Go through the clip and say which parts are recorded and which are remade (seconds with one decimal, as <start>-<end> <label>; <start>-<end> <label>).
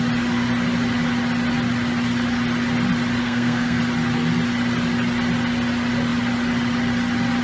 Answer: 0.0-3.2 recorded; 3.2-3.8 remade; 3.8-7.4 recorded